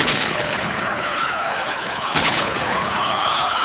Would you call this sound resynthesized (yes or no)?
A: yes